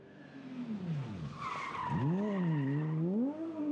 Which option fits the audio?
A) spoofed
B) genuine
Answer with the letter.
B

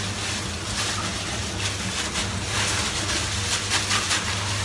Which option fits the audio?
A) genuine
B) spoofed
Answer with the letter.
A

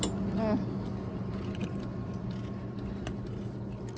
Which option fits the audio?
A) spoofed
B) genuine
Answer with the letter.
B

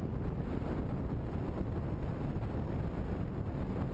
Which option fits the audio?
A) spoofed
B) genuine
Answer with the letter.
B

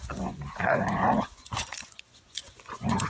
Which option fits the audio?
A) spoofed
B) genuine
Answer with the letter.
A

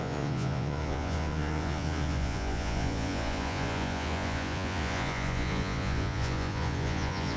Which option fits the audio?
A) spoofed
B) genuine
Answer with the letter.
A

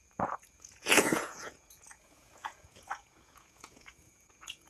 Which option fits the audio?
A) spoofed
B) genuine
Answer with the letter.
A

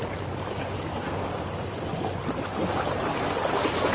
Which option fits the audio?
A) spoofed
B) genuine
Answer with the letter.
B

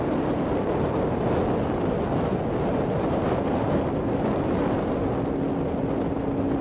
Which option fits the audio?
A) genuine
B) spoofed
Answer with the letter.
A